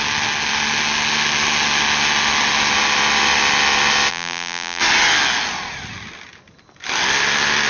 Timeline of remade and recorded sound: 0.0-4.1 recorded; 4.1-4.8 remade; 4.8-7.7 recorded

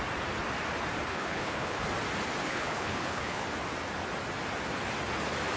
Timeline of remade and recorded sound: 0.0-1.1 recorded; 1.1-1.8 remade; 1.8-2.4 recorded; 2.4-3.4 remade; 3.4-5.6 recorded

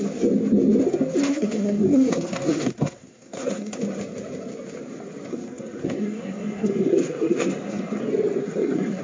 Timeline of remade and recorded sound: 0.0-1.3 recorded; 1.3-3.8 remade; 3.8-5.3 recorded; 5.3-8.0 remade; 8.0-8.4 recorded; 8.4-9.0 remade

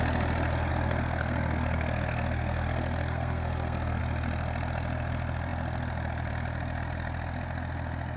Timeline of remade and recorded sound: 0.0-0.7 recorded; 0.7-4.0 remade; 4.0-8.2 recorded